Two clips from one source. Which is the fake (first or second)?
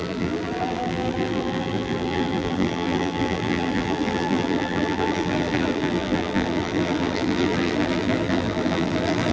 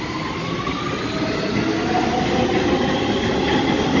first